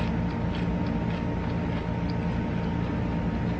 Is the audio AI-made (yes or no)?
no